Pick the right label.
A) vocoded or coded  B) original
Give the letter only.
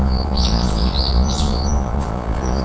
A